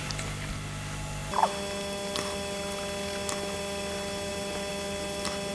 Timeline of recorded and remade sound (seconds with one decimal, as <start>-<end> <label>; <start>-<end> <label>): 0.0-5.5 recorded